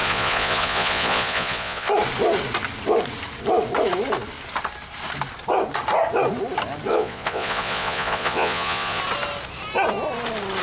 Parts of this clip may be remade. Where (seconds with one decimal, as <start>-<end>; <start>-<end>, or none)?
0.0-1.9; 6.9-9.0